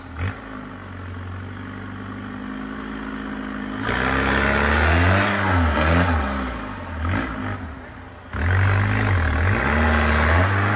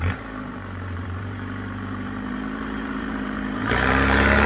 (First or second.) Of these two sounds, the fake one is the second